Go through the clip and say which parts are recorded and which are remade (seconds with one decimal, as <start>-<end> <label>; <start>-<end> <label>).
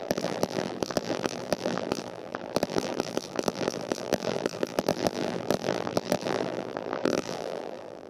0.0-8.1 remade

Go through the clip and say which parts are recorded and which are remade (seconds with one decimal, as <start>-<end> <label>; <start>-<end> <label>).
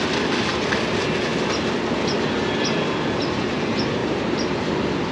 0.0-5.1 recorded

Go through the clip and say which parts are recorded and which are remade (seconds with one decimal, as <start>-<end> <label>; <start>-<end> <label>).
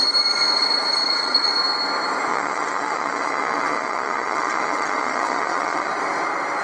0.0-1.0 recorded; 1.0-1.5 remade; 1.5-2.3 recorded; 2.3-5.9 remade; 5.9-6.6 recorded